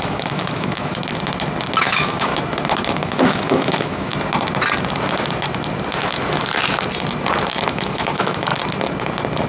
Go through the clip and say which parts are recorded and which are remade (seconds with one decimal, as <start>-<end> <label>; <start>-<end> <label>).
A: 0.0-1.0 remade; 1.0-1.8 recorded; 1.8-2.3 remade; 2.3-2.9 recorded; 2.9-4.1 remade; 4.1-7.7 recorded; 7.7-8.5 remade; 8.5-9.5 recorded